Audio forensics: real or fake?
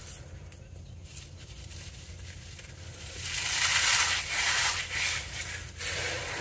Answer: real